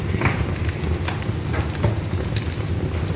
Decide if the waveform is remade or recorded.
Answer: recorded